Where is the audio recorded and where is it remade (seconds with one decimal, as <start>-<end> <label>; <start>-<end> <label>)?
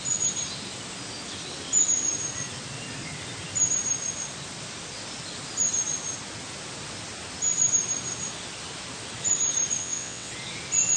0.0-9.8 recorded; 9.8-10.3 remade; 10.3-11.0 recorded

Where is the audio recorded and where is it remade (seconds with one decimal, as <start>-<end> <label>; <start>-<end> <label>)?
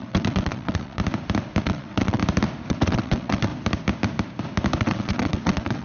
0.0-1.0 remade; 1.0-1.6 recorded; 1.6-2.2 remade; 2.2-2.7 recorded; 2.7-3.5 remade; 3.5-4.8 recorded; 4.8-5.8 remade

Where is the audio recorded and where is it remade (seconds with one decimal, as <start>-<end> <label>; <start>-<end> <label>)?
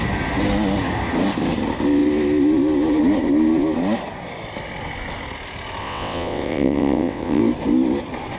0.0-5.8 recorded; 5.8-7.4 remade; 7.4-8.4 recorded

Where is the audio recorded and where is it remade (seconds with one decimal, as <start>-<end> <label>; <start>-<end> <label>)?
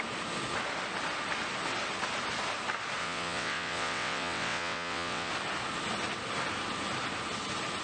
0.0-3.0 recorded; 3.0-5.3 remade; 5.3-7.8 recorded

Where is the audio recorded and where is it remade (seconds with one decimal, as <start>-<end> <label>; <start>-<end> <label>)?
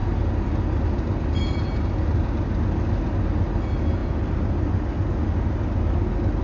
0.0-6.4 recorded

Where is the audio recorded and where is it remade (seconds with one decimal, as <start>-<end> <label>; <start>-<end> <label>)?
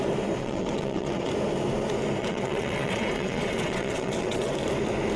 0.0-0.4 recorded; 0.4-1.3 remade; 1.3-2.2 recorded; 2.2-4.5 remade; 4.5-5.2 recorded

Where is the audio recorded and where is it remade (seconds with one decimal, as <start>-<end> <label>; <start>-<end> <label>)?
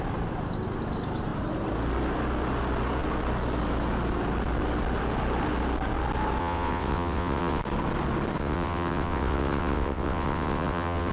0.0-6.4 recorded; 6.4-7.6 remade; 7.6-8.4 recorded; 8.4-11.1 remade